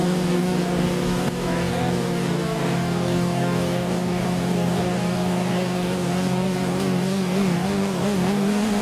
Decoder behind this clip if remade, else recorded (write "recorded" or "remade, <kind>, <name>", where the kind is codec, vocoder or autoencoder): remade, codec, DAC